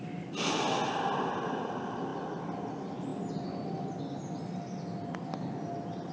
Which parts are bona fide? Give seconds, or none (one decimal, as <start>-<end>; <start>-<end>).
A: 0.0-6.1